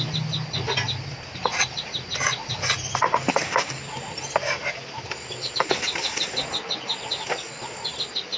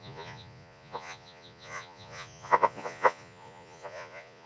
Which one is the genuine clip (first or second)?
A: first